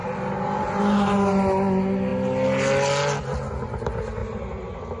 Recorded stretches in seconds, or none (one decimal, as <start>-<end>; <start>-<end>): 0.8-4.2